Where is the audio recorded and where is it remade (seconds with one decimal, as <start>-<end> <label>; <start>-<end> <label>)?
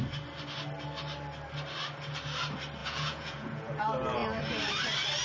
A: 0.0-2.8 recorded; 2.8-3.8 remade; 3.8-5.2 recorded